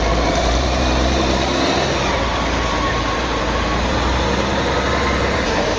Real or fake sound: fake